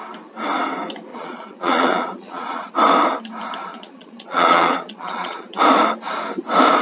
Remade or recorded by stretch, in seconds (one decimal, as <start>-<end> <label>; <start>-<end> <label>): 0.0-1.1 recorded; 1.1-2.7 remade; 2.7-3.7 recorded; 3.7-5.6 remade; 5.6-6.8 recorded